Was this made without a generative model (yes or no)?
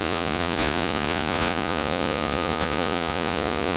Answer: no